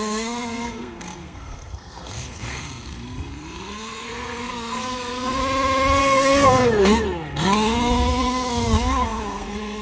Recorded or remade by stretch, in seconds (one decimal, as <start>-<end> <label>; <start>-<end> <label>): 0.0-5.4 remade; 5.4-6.0 recorded; 6.0-9.8 remade